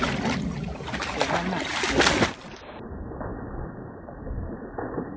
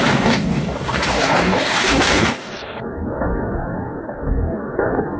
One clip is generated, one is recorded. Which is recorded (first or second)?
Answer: first